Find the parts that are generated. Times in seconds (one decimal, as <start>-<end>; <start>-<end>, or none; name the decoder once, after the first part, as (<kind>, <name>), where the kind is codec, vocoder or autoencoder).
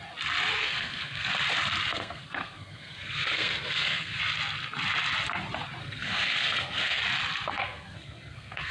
0.6-1.3 (codec, SNAC); 1.9-4.2; 5.8-7.0; 7.5-8.7